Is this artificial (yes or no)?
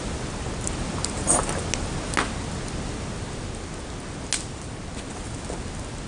no